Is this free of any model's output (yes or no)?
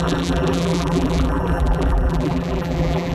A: no